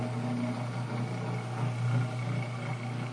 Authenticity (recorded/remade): recorded